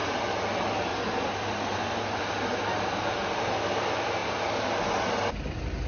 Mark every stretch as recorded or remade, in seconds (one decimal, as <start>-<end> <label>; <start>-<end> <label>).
0.0-5.9 recorded